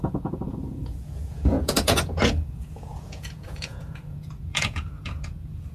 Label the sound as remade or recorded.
remade